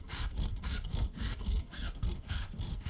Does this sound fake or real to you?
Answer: fake